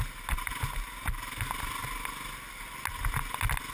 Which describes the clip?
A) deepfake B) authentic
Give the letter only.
B